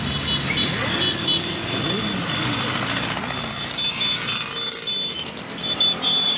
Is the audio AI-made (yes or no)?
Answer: no